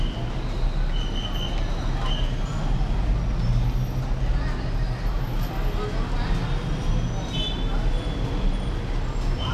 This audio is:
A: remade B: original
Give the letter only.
B